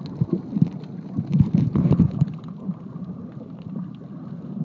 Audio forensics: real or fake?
real